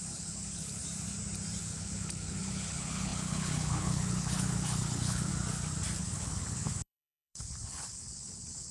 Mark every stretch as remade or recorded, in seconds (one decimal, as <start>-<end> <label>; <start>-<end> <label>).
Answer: 0.0-0.8 remade; 0.8-1.6 recorded; 1.6-5.3 remade; 5.3-6.0 recorded; 6.0-8.7 remade